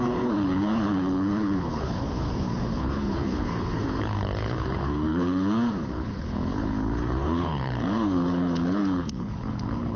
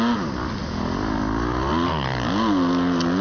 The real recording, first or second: second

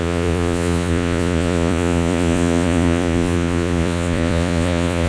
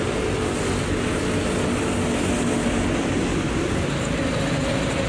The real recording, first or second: second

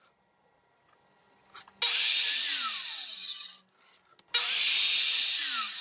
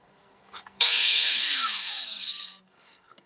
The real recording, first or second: first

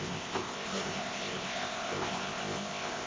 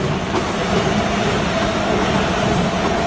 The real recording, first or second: second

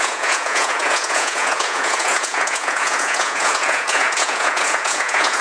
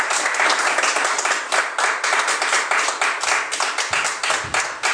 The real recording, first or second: second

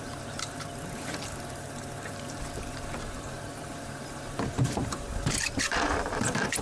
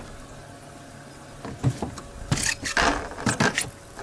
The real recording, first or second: second